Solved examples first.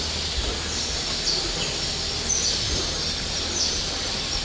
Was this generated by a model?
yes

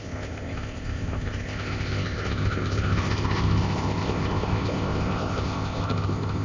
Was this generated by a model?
yes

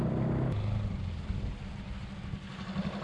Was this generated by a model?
no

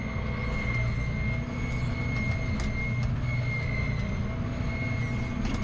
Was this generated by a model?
no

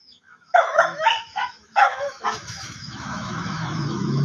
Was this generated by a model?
yes